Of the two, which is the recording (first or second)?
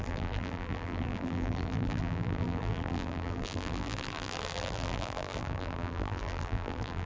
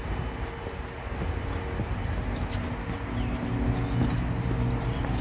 second